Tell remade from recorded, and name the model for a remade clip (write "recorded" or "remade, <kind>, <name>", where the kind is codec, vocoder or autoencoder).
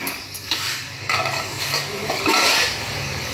remade, codec, DAC